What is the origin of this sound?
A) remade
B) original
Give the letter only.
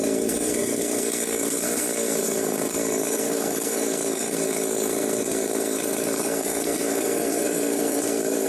A